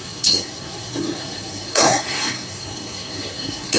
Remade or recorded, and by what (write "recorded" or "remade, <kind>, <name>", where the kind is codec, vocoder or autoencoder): remade, codec, SNAC